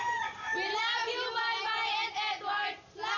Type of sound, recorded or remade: recorded